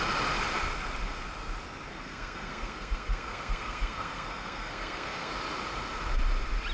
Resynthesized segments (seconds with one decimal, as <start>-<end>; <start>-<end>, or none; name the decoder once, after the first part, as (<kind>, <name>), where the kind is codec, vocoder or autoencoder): 1.9-5.3 (codec, SNAC)